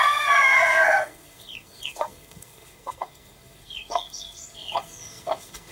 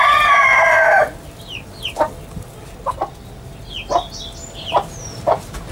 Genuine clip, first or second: second